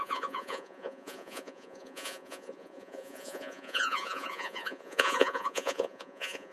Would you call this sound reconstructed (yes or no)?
yes